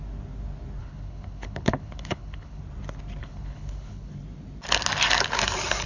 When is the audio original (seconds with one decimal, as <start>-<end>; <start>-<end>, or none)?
0.0-0.8; 2.6-3.2; 4.1-5.9